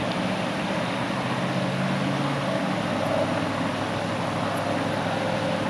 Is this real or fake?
real